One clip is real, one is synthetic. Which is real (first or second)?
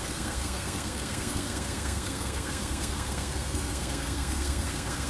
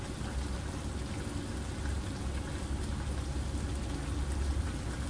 second